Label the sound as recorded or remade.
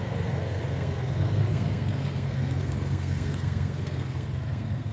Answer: remade